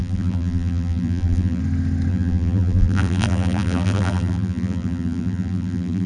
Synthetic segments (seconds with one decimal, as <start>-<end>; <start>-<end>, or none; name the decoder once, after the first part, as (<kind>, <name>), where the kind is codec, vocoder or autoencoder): 0.0-1.6 (vocoder, BigVGAN v2); 2.1-6.1